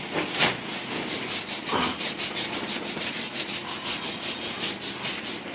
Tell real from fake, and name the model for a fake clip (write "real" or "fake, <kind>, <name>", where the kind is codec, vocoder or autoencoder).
real